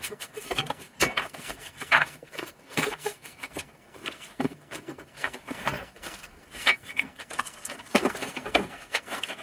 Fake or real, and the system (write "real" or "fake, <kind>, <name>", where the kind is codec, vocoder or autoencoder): fake, codec, SNAC